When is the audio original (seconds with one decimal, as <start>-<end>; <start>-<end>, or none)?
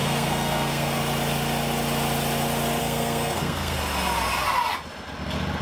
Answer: 1.0-2.8; 3.8-5.6